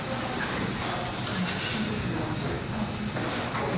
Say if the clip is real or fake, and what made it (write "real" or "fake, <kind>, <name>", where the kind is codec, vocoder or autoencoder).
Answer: real